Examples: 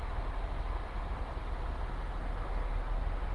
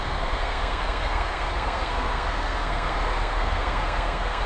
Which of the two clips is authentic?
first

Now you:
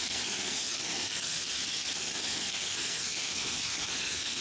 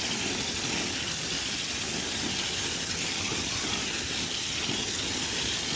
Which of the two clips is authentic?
second